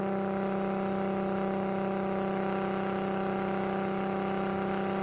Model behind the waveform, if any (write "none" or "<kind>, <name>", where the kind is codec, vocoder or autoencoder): none